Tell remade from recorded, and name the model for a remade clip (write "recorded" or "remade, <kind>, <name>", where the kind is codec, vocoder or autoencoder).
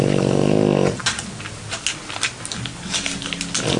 recorded